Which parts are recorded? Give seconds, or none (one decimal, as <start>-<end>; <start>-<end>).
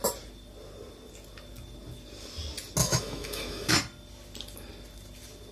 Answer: 0.0-2.8; 3.7-5.5